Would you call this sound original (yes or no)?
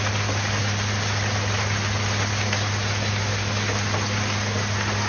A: yes